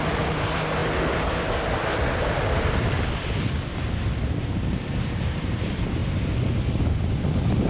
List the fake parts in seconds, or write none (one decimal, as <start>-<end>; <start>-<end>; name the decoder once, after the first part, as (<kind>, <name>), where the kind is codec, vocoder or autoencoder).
0.0-6.0 (vocoder, BigVGAN v2); 6.7-7.7